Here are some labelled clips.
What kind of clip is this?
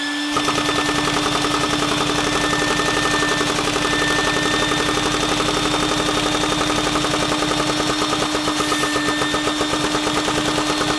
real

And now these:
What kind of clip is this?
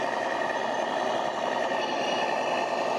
real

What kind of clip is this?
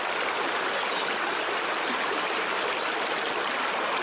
real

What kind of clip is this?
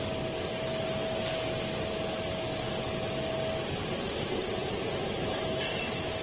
real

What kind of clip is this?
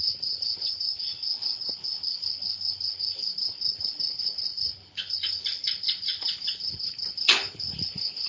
fake